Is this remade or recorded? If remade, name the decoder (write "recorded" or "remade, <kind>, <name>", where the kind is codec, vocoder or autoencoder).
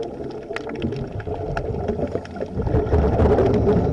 recorded